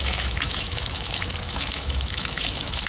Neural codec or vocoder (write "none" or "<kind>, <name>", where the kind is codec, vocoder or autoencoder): autoencoder, DAC-VAE